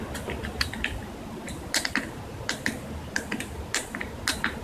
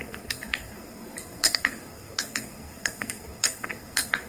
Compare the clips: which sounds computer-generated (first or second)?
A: second